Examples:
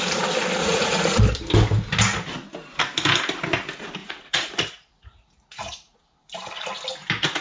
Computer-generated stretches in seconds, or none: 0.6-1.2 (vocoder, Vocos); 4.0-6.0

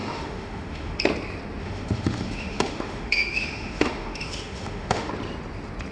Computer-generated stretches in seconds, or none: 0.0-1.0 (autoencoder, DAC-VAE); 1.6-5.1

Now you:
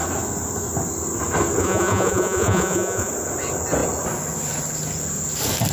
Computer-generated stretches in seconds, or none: 1.6-3.1 (vocoder, Vocos)

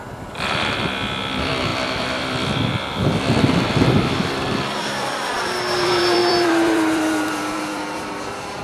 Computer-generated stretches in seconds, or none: 0.0-8.6 (vocoder, BigVGAN v2)

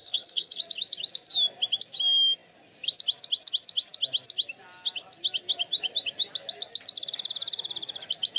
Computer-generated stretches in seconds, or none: 0.0-0.6 (codec, SNAC)